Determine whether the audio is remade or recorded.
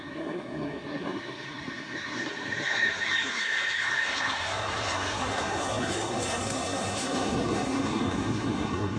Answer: remade